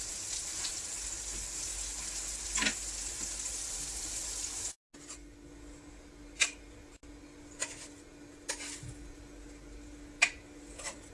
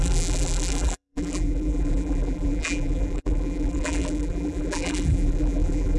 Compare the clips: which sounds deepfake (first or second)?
second